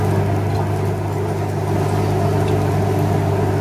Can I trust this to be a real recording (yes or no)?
yes